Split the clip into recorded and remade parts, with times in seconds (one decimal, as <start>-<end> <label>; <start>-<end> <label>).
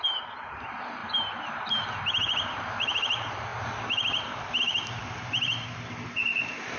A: 0.0-1.0 remade; 1.0-2.0 recorded; 2.0-3.5 remade; 3.5-4.6 recorded; 4.6-6.8 remade